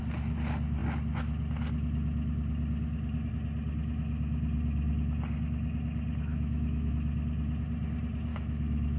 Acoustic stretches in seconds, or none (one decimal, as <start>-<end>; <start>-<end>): 0.0-6.3; 6.9-8.3